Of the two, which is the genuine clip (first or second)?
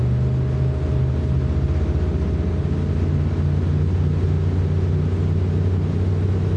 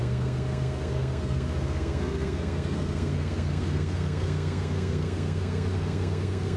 first